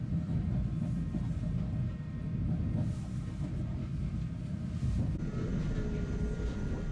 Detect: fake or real real